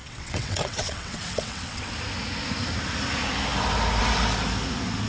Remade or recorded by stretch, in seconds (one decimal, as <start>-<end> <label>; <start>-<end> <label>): 0.0-1.9 remade; 1.9-5.1 recorded